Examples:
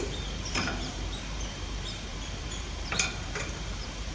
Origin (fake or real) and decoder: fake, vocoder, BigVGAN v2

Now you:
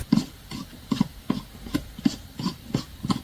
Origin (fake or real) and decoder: fake, vocoder, BigVGAN v2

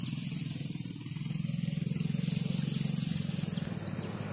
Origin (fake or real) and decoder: real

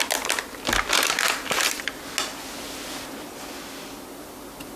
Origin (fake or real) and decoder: real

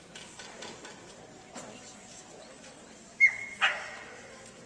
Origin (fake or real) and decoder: real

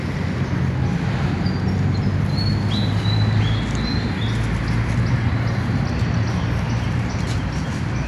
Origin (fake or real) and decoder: real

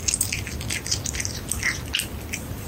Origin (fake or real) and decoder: real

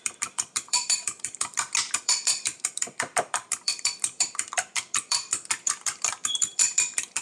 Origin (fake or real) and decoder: fake, vocoder, BigVGAN v2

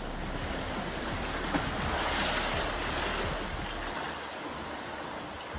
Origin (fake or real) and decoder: real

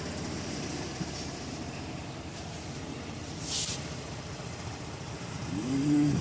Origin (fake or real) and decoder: fake, vocoder, BigVGAN v2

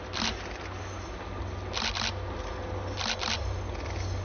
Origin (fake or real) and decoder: real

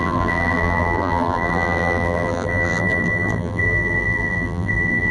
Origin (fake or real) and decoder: fake, vocoder, BigVGAN v2